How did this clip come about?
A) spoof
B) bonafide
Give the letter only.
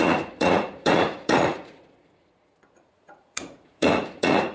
A